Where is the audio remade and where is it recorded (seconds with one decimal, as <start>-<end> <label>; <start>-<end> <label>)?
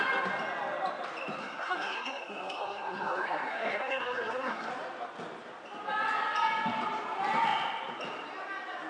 0.0-1.4 recorded; 1.4-4.7 remade; 4.7-8.9 recorded